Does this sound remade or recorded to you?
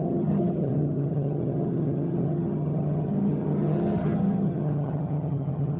remade